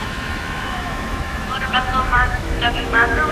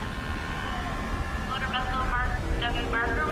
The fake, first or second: first